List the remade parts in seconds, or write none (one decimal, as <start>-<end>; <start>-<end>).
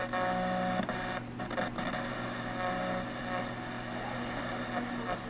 none